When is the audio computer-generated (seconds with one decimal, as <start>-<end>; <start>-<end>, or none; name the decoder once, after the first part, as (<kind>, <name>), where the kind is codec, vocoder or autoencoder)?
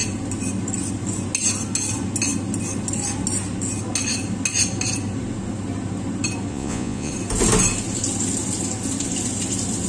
6.5-7.1 (vocoder, Vocos)